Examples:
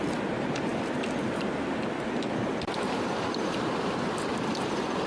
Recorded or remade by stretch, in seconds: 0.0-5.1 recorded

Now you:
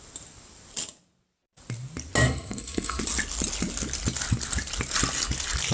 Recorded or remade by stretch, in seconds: 0.0-2.2 recorded; 2.2-3.0 remade; 3.0-5.7 recorded

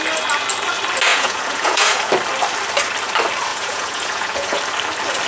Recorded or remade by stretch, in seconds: 0.0-1.1 recorded; 1.1-2.1 remade; 2.1-3.5 recorded; 3.5-4.6 remade; 4.6-5.3 recorded

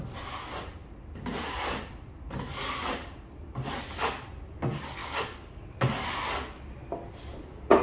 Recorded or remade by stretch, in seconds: 0.0-5.0 recorded; 5.0-5.6 remade; 5.6-7.8 recorded

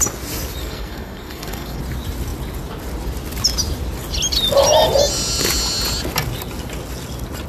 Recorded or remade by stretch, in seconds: 0.0-0.6 recorded; 0.6-1.8 remade; 1.8-7.5 recorded

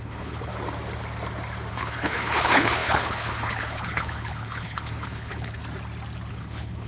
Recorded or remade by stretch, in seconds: 0.0-0.5 remade; 0.5-1.7 recorded; 1.7-5.6 remade; 5.6-6.3 recorded; 6.3-6.9 remade

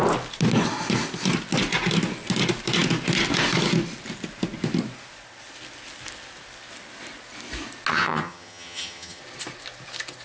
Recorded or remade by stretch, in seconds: 0.0-7.9 recorded; 7.9-9.2 remade; 9.2-10.2 recorded

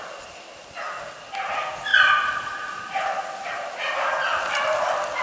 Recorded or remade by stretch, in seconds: 0.0-5.2 recorded